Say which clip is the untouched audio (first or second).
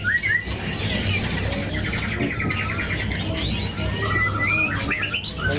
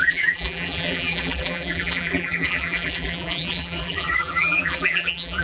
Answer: first